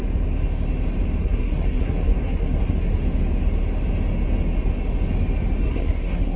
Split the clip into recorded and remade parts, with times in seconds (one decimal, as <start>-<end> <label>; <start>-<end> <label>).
0.0-1.2 recorded; 1.2-2.9 remade; 2.9-5.6 recorded; 5.6-6.4 remade